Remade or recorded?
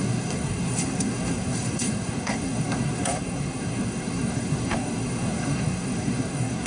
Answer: remade